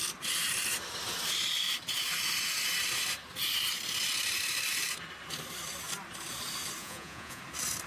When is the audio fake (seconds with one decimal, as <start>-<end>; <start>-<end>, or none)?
6.8-7.4